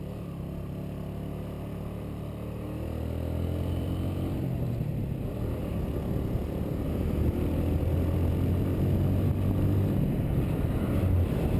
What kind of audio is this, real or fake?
real